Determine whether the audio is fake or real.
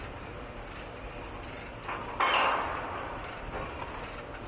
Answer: real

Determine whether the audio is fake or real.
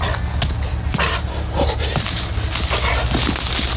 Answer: real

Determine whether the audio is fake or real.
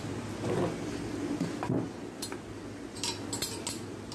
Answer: real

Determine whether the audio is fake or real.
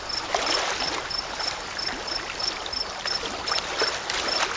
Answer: real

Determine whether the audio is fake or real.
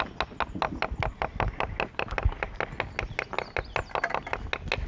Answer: real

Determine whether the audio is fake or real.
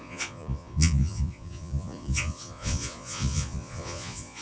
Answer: fake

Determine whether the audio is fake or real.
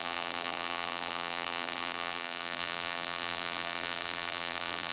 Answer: fake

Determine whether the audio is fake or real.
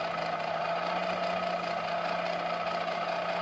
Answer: real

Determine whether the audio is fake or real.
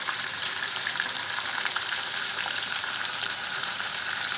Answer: fake